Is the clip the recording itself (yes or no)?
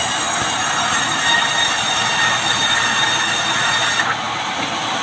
yes